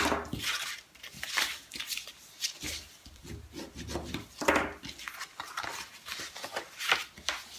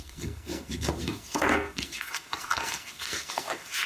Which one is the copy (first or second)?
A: second